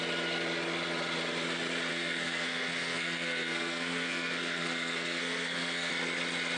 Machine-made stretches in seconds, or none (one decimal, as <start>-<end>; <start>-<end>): 1.9-5.9